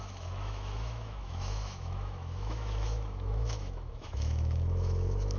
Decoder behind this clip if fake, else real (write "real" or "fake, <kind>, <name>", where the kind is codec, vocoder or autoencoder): fake, autoencoder, DAC-VAE